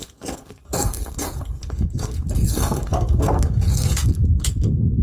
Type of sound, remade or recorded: remade